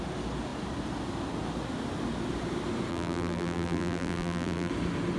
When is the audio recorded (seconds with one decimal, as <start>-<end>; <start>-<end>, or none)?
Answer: 0.0-2.9; 4.7-5.2